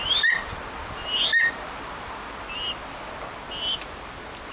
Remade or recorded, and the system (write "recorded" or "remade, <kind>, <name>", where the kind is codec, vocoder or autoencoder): recorded